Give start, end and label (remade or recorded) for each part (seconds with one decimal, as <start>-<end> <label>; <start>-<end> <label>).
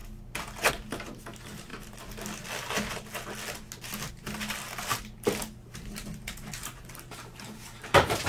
0.0-5.4 recorded; 5.4-8.3 remade